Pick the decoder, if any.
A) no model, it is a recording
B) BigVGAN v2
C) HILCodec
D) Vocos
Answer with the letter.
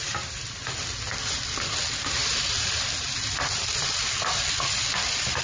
B